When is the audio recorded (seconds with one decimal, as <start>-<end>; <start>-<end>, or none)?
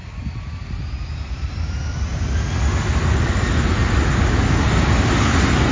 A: 0.0-5.7